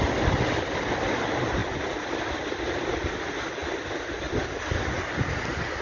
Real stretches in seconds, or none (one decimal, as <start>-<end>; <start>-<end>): 0.0-5.8